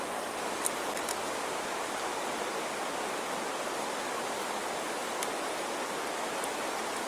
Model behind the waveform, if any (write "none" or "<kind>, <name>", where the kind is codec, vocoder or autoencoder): none